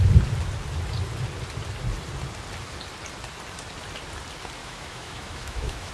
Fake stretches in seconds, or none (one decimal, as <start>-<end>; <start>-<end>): 4.6-5.9